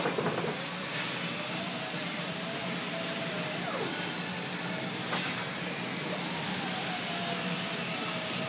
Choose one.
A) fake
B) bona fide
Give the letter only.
B